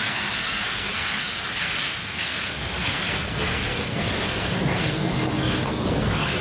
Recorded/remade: remade